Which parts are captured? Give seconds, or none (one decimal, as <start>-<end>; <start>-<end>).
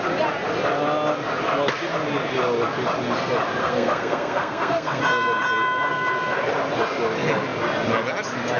0.0-3.6; 5.0-8.6